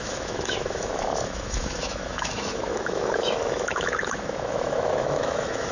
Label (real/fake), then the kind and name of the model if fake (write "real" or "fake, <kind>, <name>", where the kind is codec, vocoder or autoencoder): fake, autoencoder, DAC-VAE